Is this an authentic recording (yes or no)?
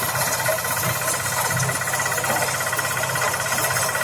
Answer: yes